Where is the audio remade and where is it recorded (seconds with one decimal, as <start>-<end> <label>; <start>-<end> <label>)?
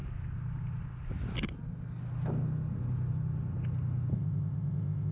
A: 0.0-4.1 recorded; 4.1-5.1 remade